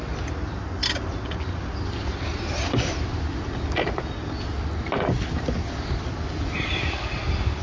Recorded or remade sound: recorded